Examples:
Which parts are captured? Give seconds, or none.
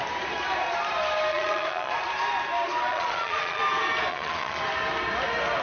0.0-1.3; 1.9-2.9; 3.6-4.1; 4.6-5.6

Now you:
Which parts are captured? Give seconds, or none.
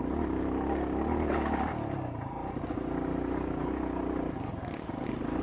0.0-5.4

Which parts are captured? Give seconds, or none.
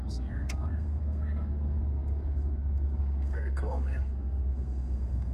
none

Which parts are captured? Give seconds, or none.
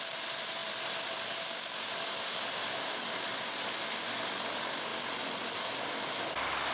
0.0-0.6; 2.5-4.9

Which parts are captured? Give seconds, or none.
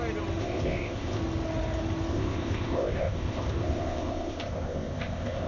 0.0-0.4; 1.2-2.1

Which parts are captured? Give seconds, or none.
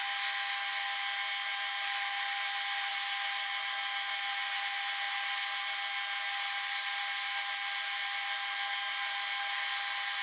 0.0-10.2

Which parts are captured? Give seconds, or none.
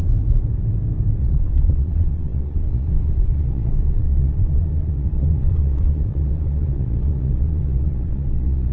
0.0-1.2